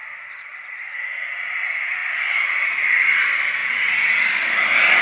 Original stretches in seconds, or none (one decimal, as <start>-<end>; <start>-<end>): 0.0-5.0